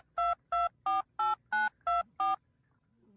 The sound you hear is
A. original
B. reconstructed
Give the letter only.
A